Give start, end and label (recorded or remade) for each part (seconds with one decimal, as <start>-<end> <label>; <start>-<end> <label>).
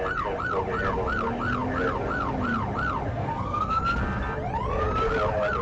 0.0-3.1 recorded; 3.1-3.8 remade; 3.8-5.6 recorded